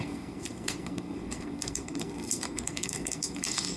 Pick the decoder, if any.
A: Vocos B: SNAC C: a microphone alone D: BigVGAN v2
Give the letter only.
B